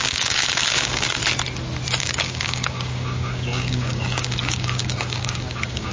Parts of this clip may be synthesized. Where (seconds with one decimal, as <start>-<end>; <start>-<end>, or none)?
0.0-1.2; 2.0-5.9